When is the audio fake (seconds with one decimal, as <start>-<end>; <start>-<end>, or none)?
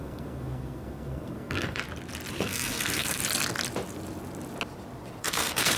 0.0-1.8; 2.3-3.2; 5.2-5.8